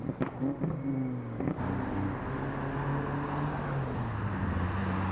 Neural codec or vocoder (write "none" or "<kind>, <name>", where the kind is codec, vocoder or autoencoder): none